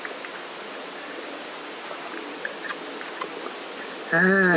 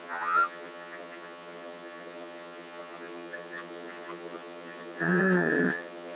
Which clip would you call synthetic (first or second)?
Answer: second